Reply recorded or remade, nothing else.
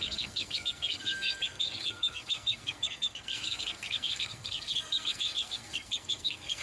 remade